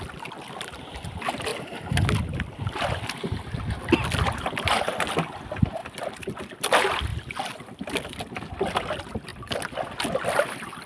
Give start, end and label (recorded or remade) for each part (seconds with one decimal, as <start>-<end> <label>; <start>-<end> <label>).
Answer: 0.0-10.9 recorded